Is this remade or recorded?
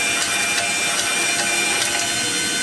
recorded